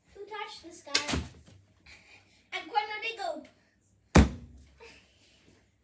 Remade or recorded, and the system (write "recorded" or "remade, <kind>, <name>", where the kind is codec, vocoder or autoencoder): recorded